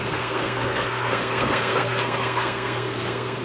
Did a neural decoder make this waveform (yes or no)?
yes